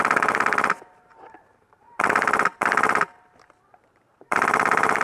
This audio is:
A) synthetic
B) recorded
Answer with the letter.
A